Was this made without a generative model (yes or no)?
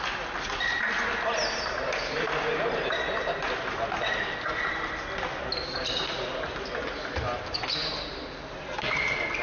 yes